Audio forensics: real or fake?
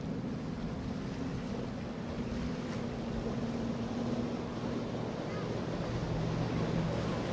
real